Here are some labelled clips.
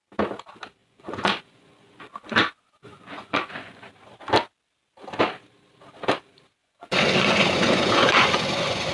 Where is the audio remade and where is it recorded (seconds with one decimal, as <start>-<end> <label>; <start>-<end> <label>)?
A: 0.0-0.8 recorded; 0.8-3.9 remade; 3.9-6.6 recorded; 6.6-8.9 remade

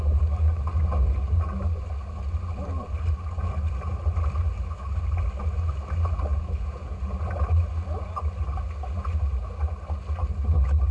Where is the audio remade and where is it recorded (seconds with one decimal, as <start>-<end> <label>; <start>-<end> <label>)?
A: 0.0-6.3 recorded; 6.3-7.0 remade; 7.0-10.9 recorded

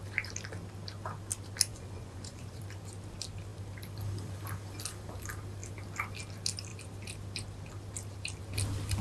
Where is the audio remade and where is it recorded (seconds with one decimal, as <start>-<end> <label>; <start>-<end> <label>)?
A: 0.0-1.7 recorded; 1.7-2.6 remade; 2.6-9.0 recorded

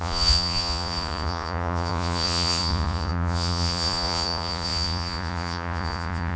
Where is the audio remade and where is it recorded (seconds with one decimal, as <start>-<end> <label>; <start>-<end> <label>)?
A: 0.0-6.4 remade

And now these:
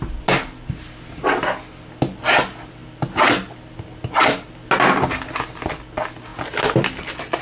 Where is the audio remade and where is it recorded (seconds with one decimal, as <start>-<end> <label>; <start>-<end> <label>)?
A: 0.0-7.4 recorded

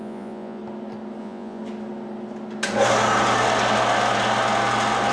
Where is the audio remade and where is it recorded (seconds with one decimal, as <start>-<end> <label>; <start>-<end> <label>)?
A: 0.0-0.6 remade; 0.6-1.2 recorded; 1.2-1.6 remade; 1.6-5.1 recorded